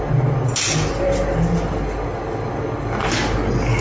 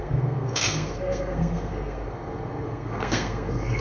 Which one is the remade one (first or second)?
second